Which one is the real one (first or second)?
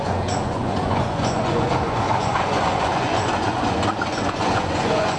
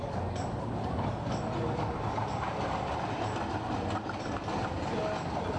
second